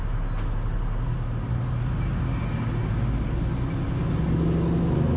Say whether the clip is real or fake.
real